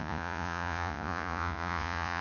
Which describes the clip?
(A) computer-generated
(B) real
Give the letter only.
A